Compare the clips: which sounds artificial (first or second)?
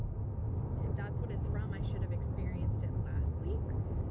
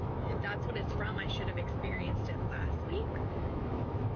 second